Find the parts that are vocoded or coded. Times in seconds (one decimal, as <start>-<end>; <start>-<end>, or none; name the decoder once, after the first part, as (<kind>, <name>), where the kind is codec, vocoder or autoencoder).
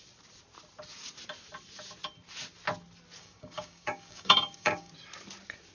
3.2-4.9 (codec, DAC)